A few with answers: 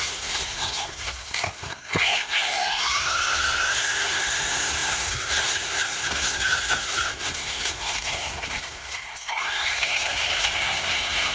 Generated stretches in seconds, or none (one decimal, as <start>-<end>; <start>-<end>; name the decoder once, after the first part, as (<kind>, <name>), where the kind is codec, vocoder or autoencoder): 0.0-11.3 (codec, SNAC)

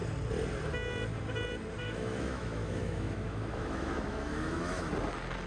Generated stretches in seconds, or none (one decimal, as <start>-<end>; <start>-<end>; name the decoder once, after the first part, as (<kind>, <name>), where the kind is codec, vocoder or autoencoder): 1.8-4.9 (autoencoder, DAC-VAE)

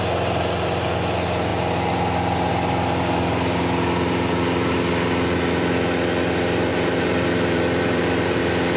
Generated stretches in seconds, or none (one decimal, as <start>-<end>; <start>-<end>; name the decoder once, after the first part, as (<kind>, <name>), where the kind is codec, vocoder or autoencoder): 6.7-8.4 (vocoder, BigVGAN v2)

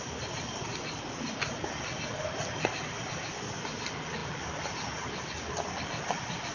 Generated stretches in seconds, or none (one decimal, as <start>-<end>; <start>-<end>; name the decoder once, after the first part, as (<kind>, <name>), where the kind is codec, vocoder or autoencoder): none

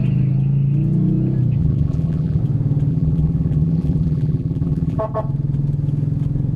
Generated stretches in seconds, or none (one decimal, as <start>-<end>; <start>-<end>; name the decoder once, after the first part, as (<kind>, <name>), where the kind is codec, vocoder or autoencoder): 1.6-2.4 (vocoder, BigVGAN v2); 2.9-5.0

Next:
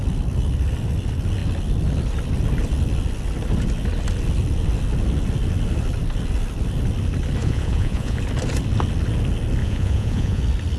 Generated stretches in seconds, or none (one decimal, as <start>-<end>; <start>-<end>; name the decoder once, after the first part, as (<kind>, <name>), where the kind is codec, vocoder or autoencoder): 7.4-8.2 (vocoder, Vocos); 9.6-10.4

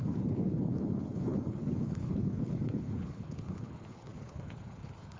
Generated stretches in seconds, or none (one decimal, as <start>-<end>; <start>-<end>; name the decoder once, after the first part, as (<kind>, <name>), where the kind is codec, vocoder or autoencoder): 0.0-5.2 (codec, HILCodec)

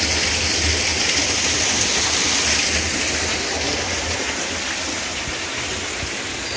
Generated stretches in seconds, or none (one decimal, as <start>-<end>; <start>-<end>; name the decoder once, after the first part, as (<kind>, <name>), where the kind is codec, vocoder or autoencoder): 0.9-3.2 (vocoder, BigVGAN v2)